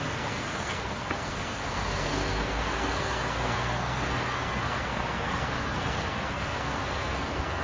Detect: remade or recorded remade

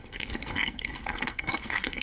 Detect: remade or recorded remade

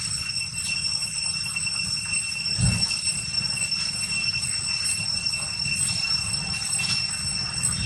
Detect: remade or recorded recorded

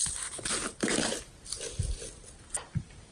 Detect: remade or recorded recorded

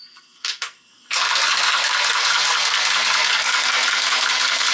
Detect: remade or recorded remade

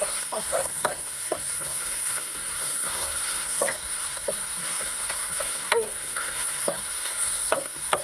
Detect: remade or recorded remade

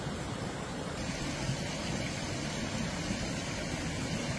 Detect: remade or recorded recorded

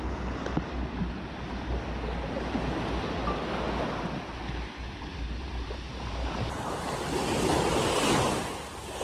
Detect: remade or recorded recorded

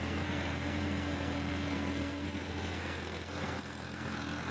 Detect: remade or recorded remade